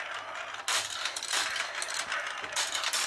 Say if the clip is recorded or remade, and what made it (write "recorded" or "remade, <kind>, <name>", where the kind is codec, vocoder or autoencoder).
recorded